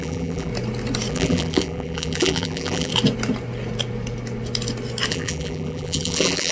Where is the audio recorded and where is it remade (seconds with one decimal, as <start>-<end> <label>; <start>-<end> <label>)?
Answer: 0.0-0.5 remade; 0.5-1.1 recorded; 1.1-2.9 remade; 2.9-5.1 recorded; 5.1-6.5 remade